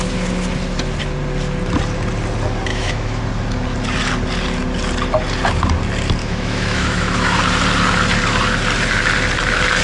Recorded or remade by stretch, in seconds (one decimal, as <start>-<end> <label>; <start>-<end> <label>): 0.0-2.7 recorded; 2.7-3.2 remade; 3.2-6.2 recorded; 6.2-7.4 remade; 7.4-9.8 recorded